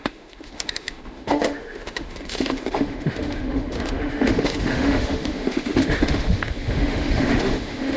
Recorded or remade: remade